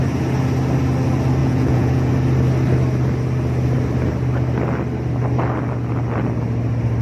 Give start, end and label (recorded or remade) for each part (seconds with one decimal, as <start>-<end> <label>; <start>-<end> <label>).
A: 0.0-1.4 recorded; 1.4-2.1 remade; 2.1-7.0 recorded